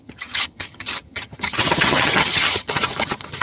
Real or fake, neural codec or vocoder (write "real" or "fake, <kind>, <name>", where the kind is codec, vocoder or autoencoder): fake, vocoder, HiFi-GAN